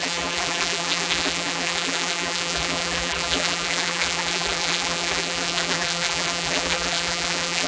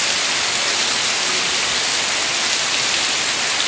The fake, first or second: first